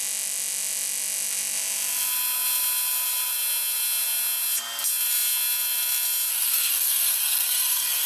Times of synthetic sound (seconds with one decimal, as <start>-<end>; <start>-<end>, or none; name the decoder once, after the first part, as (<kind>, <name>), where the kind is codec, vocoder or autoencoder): 6.3-8.1 (codec, SNAC)

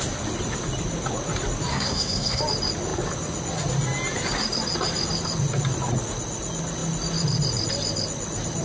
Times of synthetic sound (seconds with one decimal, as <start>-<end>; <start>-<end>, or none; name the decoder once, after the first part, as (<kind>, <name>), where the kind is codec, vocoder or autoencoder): 1.7-2.4 (codec, SNAC)

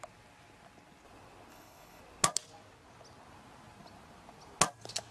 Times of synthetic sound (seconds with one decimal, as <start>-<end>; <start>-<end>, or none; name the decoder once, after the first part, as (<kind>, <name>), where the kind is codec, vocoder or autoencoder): 1.5-2.0 (codec, HILCodec)

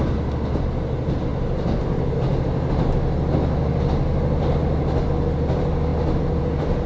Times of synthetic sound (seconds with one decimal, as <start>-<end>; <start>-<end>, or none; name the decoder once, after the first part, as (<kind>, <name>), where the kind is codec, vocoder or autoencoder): none

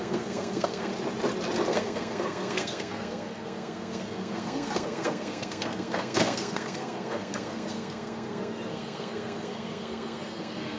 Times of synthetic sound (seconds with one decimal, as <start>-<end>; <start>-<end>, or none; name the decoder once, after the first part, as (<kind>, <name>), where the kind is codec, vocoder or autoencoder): 0.0-0.9 (codec, SNAC); 1.7-10.8

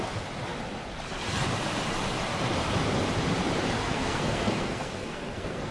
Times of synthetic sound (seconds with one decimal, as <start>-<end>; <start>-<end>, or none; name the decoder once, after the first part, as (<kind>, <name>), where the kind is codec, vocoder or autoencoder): 3.8-5.7 (codec, SNAC)

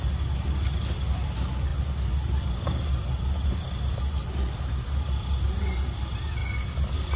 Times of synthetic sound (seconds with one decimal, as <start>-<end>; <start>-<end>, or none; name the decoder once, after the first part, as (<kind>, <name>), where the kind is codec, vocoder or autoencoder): none

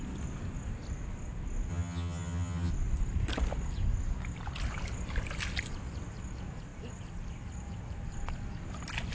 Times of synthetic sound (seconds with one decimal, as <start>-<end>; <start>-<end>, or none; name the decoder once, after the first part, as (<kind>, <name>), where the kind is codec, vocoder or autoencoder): 1.7-2.7 (vocoder, HiFi-GAN)